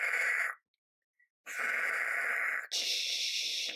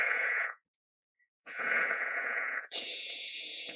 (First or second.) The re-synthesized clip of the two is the second